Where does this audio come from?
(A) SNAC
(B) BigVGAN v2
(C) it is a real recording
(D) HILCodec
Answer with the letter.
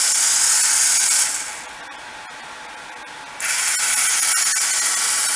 C